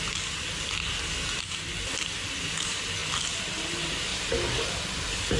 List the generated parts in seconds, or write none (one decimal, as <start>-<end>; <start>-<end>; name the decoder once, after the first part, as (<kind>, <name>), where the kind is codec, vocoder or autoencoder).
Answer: none